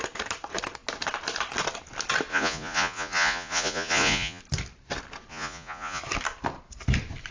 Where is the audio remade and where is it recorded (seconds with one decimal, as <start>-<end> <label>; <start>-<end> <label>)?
0.0-2.3 recorded; 2.3-4.4 remade; 4.4-5.3 recorded; 5.3-6.0 remade; 6.0-7.3 recorded